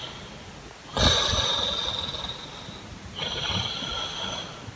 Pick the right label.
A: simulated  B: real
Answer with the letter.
B